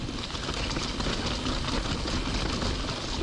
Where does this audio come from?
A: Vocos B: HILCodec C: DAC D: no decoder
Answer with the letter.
D